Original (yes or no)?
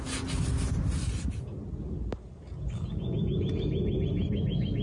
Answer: yes